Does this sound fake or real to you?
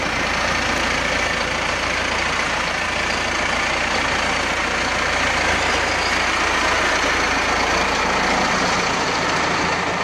real